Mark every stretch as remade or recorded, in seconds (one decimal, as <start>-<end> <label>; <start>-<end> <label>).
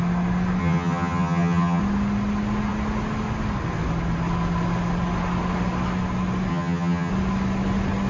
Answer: 0.0-0.6 recorded; 0.6-1.8 remade; 1.8-6.5 recorded; 6.5-7.1 remade; 7.1-8.1 recorded